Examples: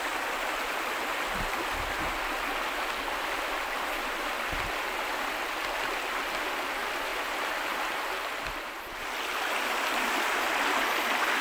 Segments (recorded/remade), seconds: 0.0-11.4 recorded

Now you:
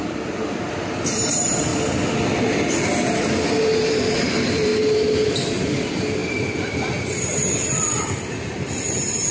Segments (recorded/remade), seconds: 0.0-1.7 remade; 1.7-3.9 recorded; 3.9-4.7 remade; 4.7-5.3 recorded; 5.3-9.3 remade

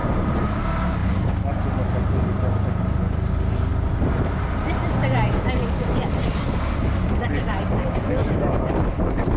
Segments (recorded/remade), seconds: 0.0-0.6 remade; 0.6-8.2 recorded; 8.2-9.4 remade

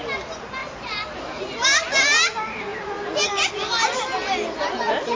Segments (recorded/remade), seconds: 0.0-0.6 recorded; 0.6-1.4 remade; 1.4-5.2 recorded